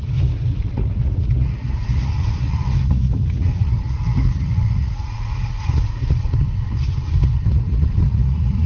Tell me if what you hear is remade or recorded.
remade